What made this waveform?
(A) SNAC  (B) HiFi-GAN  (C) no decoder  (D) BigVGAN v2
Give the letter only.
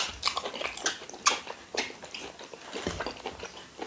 C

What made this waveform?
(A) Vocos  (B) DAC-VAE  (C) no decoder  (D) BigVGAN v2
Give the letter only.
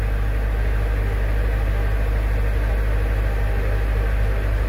C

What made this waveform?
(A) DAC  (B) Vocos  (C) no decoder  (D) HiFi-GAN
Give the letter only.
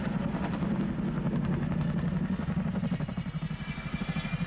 C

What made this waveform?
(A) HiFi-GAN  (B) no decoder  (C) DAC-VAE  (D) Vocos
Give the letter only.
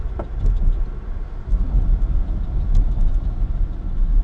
B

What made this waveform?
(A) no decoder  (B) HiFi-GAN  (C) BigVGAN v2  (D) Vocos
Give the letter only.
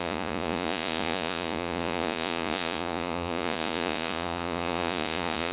D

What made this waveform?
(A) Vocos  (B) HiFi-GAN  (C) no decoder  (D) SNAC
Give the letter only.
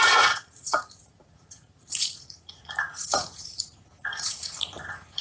A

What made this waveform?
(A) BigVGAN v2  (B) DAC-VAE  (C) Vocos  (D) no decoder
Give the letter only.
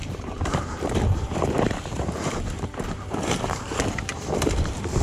A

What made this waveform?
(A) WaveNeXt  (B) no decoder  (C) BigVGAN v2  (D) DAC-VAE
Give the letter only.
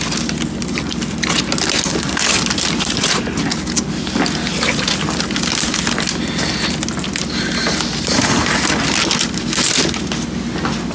B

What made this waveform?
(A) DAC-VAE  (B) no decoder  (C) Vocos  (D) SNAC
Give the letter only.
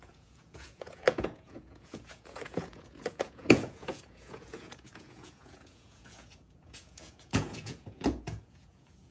C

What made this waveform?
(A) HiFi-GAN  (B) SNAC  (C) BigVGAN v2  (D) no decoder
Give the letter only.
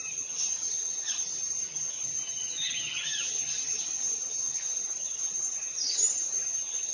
A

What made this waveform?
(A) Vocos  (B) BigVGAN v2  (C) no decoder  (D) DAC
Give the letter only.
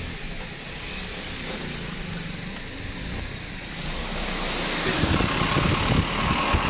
C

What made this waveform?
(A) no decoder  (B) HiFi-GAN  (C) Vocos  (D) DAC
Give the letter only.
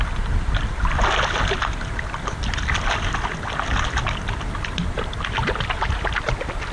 A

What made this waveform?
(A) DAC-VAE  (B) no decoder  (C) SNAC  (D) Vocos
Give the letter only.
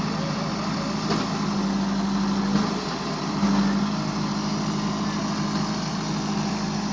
B